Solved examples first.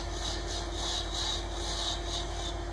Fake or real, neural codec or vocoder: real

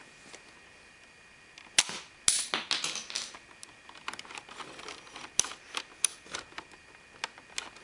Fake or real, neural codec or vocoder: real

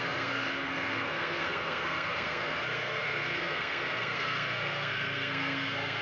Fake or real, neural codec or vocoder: fake, codec, SNAC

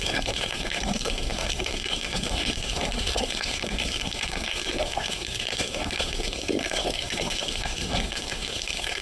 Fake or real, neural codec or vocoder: fake, codec, SNAC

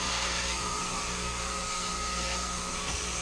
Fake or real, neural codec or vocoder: fake, codec, SNAC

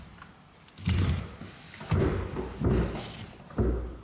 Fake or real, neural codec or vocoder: real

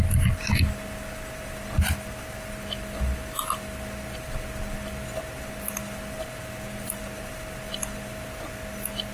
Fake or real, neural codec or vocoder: real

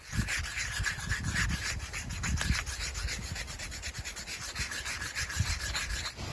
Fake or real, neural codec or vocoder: real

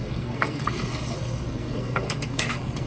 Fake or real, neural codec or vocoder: fake, codec, SNAC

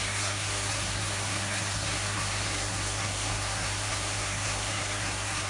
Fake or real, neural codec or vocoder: fake, codec, SNAC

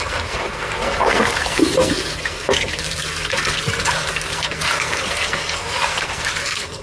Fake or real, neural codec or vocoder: fake, codec, SNAC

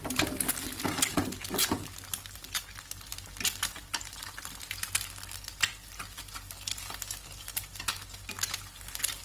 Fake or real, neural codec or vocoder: real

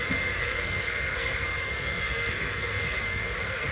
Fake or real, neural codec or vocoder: fake, codec, SNAC